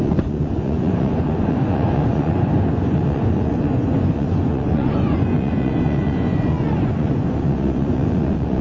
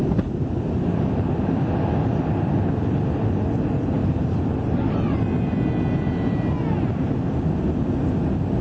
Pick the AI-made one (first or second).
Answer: first